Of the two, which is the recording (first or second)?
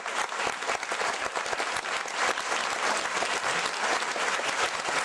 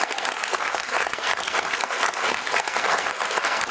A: first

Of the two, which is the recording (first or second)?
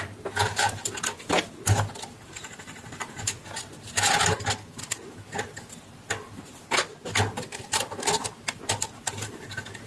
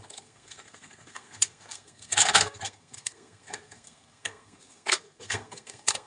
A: first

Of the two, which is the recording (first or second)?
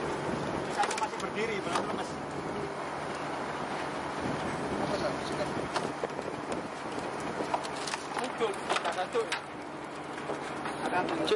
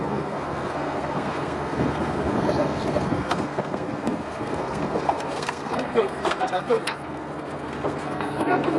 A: first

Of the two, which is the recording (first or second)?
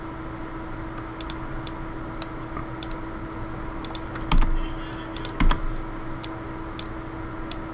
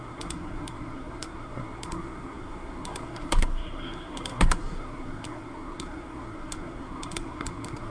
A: first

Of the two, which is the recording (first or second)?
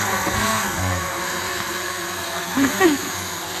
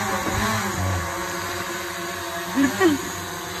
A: second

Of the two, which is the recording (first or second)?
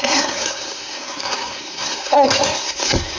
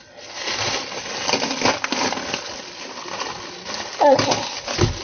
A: second